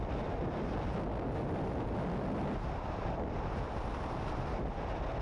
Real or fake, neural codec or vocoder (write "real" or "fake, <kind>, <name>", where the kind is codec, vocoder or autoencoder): real